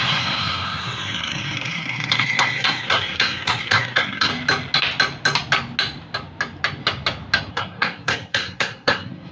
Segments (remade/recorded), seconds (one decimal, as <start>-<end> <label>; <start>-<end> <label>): 0.0-4.3 remade; 4.3-7.5 recorded; 7.5-9.3 remade